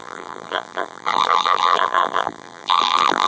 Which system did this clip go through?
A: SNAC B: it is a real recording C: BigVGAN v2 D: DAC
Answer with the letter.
C